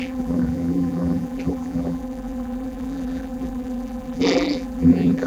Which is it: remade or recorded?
remade